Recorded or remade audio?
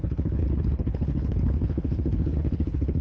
remade